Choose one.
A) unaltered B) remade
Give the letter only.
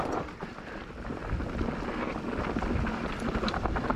A